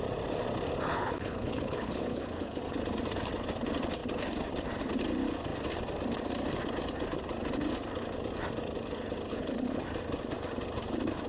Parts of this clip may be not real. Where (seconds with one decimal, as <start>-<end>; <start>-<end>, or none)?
0.9-2.6; 9.3-9.8